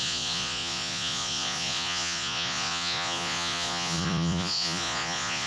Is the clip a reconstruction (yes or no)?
yes